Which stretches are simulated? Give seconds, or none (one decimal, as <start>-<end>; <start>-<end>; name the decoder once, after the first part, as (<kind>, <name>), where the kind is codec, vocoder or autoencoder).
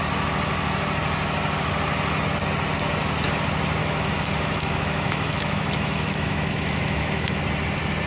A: 3.8-7.4 (autoencoder, DAC-VAE)